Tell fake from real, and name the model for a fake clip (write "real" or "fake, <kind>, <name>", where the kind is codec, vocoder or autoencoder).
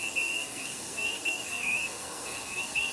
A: fake, codec, SNAC